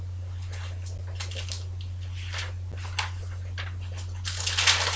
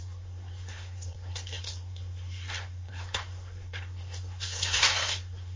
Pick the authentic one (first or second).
first